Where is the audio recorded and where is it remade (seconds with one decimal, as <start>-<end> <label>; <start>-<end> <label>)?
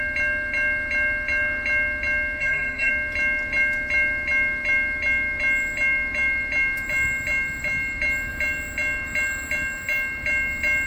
0.0-2.4 recorded; 2.4-2.9 remade; 2.9-10.9 recorded